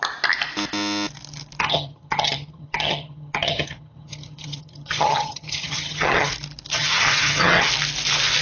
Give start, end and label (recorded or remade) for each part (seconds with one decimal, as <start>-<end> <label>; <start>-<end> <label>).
0.0-1.6 recorded; 1.6-6.3 remade; 6.3-6.7 recorded; 6.7-7.7 remade; 7.7-8.4 recorded